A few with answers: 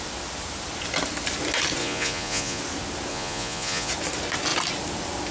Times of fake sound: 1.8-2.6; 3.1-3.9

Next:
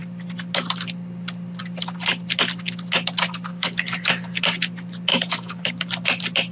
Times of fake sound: 3.5-4.6; 5.1-5.7

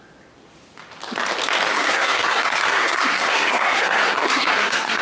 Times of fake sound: 1.7-5.0

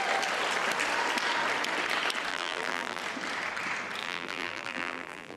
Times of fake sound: 2.3-3.0; 4.0-5.4

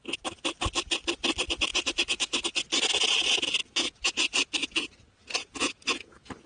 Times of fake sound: 1.7-2.4; 3.6-4.1; 4.6-6.1

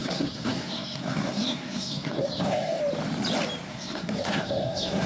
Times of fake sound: 0.0-2.8; 3.7-5.1